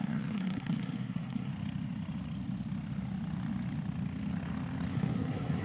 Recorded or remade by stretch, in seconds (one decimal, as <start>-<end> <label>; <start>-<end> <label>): 0.0-1.5 remade; 1.5-4.9 recorded; 4.9-5.6 remade